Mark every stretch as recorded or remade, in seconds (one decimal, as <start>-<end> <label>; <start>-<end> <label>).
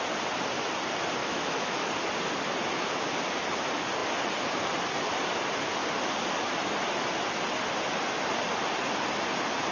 0.0-1.2 recorded; 1.2-1.9 remade; 1.9-9.7 recorded